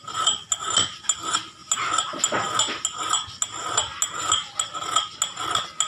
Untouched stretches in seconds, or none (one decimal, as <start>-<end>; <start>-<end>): 0.0-5.9